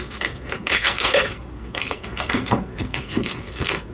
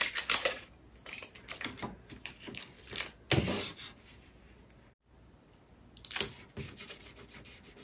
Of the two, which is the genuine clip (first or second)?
second